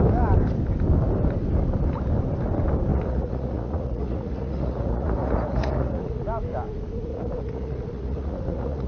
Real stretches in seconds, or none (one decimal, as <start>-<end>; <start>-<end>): 0.0-2.9; 6.2-7.1